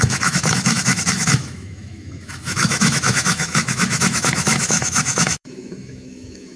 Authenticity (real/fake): fake